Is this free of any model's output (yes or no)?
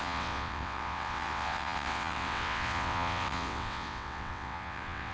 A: no